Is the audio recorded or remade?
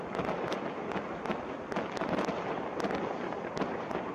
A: recorded